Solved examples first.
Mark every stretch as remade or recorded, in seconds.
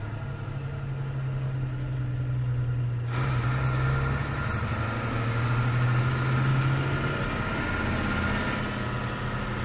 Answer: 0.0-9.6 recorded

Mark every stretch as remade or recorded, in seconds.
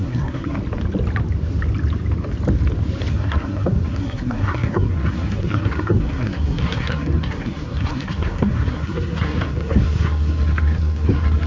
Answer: 0.0-0.6 remade; 0.6-3.1 recorded; 3.1-11.5 remade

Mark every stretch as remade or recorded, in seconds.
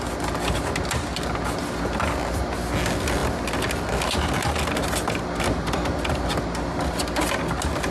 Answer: 0.0-7.9 recorded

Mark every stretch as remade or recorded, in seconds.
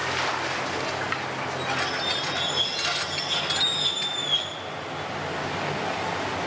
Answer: 0.0-6.5 recorded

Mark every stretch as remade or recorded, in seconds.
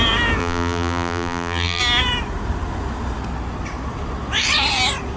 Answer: 0.0-0.4 recorded; 0.4-1.8 remade; 1.8-5.2 recorded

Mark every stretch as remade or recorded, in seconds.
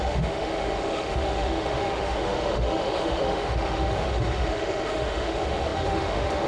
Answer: 0.0-6.5 remade